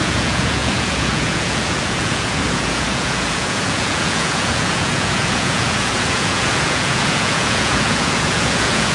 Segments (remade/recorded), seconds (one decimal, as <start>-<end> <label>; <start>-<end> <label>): 0.0-8.9 remade